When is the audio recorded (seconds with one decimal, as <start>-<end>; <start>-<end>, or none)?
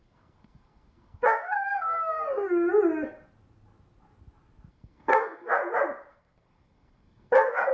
2.7-4.7; 5.6-6.1